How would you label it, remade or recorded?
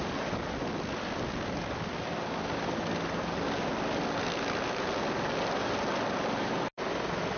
recorded